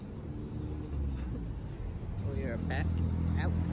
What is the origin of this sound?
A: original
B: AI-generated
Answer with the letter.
A